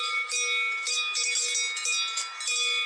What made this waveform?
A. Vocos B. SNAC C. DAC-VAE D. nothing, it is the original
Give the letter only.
D